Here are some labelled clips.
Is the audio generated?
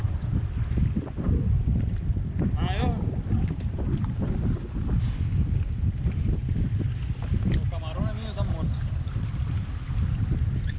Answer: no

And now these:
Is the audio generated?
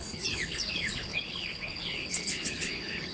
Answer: yes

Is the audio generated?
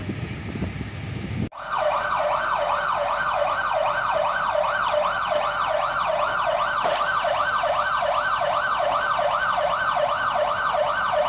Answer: no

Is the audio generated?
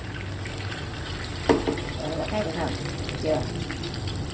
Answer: no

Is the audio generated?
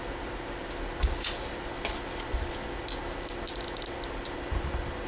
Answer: no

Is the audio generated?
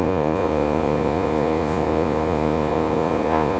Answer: yes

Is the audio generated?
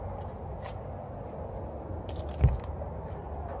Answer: no